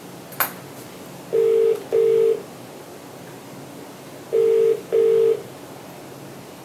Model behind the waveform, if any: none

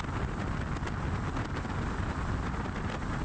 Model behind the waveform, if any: none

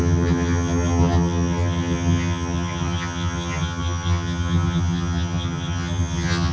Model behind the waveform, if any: vocoder, HiFi-GAN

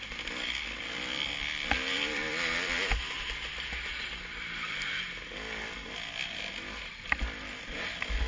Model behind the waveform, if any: none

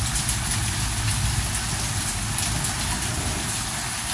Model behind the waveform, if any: none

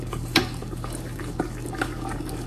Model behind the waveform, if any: codec, DAC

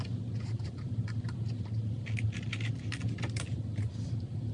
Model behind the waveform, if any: none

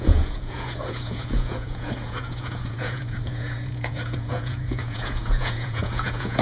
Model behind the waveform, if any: vocoder, Vocos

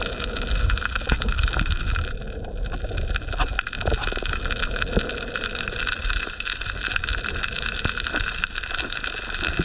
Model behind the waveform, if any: none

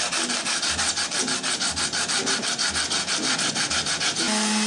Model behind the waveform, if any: none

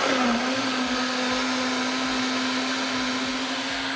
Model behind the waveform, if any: none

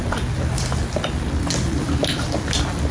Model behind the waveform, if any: none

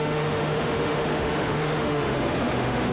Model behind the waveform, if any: autoencoder, DAC-VAE